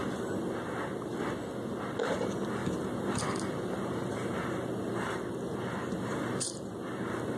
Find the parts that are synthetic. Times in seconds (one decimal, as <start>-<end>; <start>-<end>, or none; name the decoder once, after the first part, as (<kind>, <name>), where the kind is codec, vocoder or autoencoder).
0.0-1.1 (vocoder, BigVGAN v2); 2.0-7.4